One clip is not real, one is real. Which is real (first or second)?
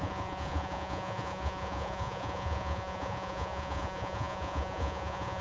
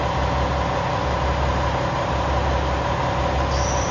second